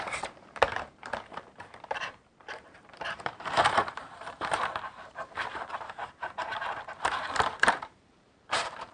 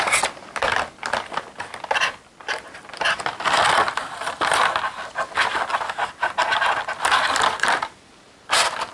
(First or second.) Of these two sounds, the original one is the second